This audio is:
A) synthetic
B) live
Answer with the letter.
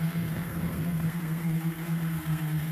A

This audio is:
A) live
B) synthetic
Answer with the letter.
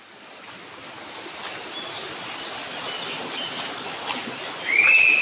A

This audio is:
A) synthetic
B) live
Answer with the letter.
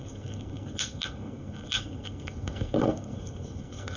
A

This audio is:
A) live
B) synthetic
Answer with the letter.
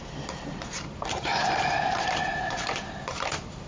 B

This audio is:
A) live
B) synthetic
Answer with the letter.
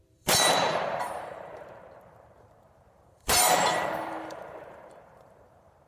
B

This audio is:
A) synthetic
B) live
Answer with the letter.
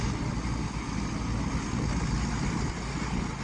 B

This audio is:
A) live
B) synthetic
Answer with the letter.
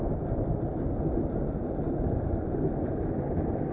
A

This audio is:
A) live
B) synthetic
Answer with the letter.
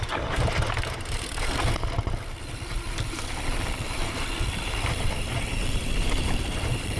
B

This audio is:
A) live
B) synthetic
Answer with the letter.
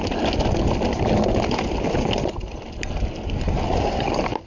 A